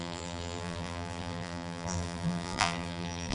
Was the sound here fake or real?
fake